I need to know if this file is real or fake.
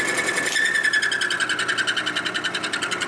real